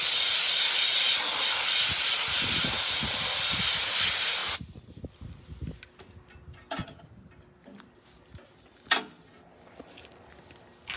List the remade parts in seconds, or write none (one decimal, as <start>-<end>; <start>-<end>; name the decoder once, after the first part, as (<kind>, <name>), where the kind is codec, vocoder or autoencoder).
6.8-7.3 (vocoder, HiFi-GAN)